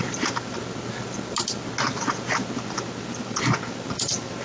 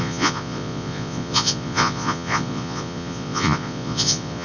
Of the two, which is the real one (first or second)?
first